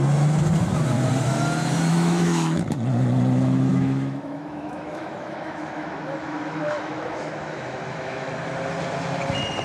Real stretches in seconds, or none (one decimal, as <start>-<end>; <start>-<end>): 0.0-1.9; 2.6-3.7; 8.3-9.6